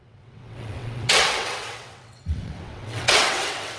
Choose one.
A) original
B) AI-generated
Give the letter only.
B